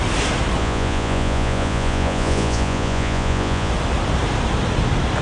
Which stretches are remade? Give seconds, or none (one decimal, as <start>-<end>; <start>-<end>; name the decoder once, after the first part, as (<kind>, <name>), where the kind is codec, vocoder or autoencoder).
0.6-3.7 (vocoder, Vocos)